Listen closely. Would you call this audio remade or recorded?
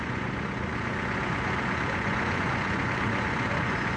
remade